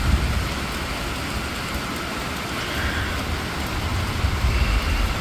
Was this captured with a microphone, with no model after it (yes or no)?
yes